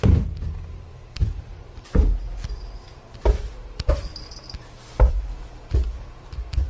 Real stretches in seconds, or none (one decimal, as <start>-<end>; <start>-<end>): 0.0-0.7; 1.2-3.4; 4.1-5.1